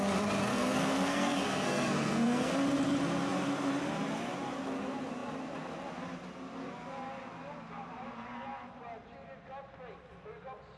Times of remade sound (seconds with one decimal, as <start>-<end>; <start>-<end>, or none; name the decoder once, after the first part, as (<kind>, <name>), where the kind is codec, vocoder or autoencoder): 0.5-2.5 (codec, SNAC)